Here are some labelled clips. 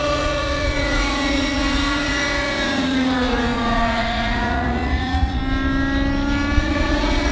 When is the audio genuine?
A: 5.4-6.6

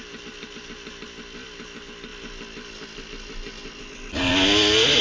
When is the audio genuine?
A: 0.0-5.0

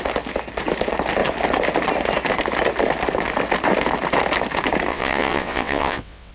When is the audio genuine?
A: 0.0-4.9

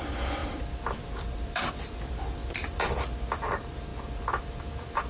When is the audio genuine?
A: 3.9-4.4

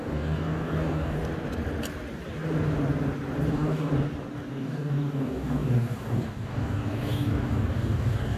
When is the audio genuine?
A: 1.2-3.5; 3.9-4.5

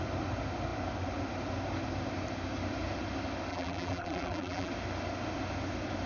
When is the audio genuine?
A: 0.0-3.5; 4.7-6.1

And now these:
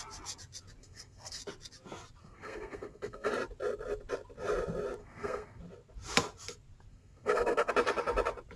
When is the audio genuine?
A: 0.0-0.8; 1.4-2.2; 3.3-5.0; 5.6-6.9; 7.7-8.6